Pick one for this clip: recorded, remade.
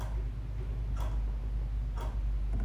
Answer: recorded